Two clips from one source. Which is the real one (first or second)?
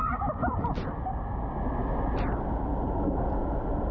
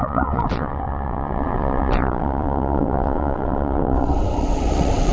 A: first